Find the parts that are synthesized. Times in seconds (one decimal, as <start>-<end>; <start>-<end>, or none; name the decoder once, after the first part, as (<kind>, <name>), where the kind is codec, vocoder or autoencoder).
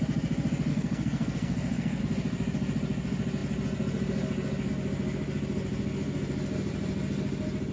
0.7-2.0 (codec, SNAC)